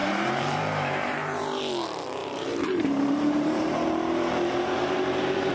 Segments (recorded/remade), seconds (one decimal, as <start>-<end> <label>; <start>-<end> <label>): 0.0-1.6 remade; 1.6-2.2 recorded; 2.2-5.5 remade